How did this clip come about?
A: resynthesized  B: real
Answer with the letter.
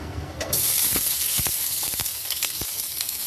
A